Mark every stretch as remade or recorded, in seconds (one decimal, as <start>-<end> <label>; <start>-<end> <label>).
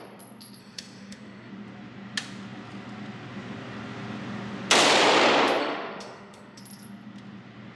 0.0-0.6 recorded; 0.6-1.5 remade; 1.5-5.6 recorded; 5.6-6.6 remade; 6.6-7.8 recorded